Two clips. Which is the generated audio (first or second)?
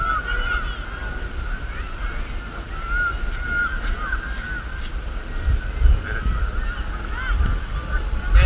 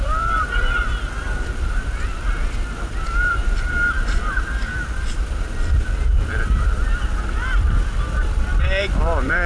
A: second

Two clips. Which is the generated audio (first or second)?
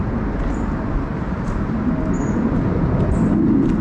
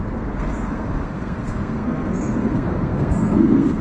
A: second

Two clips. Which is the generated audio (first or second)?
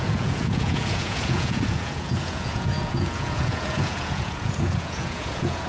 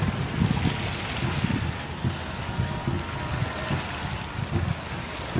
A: first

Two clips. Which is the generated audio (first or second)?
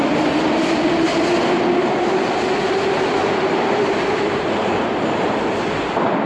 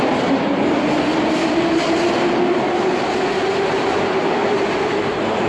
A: first